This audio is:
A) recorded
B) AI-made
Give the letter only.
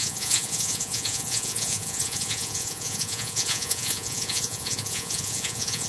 B